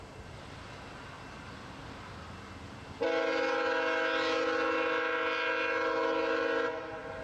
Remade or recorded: recorded